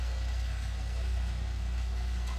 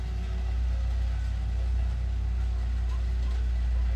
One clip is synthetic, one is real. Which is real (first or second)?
second